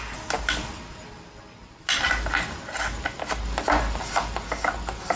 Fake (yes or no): no